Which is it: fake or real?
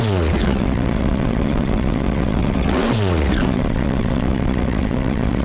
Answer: fake